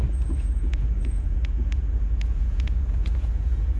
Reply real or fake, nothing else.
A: fake